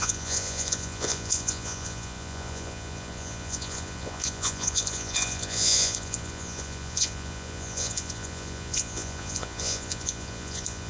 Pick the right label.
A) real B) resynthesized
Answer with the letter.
B